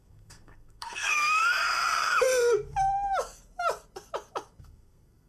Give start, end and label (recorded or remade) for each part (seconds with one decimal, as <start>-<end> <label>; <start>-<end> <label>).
0.0-1.4 remade; 1.4-4.6 recorded; 4.6-5.3 remade